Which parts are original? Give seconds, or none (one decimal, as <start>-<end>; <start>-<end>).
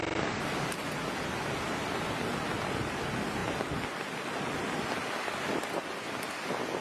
0.0-6.8